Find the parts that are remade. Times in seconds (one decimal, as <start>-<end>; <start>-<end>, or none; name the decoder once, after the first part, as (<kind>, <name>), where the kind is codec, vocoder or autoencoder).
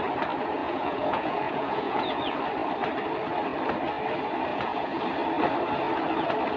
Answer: 0.6-2.4 (vocoder, Vocos); 4.5-5.0